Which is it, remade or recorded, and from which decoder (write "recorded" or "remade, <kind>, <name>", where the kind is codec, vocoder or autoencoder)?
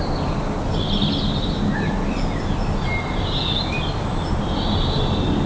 recorded